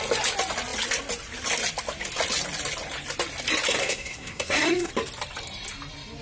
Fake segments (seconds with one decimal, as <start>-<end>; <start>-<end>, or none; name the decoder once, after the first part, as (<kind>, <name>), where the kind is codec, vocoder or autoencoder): 3.8-4.9 (codec, SNAC)